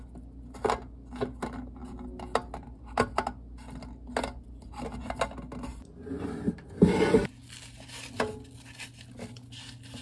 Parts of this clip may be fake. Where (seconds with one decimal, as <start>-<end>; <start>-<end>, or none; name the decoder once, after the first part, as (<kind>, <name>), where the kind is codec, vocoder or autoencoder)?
none